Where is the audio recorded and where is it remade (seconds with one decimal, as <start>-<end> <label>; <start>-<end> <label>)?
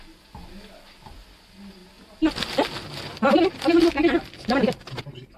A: 0.0-5.4 recorded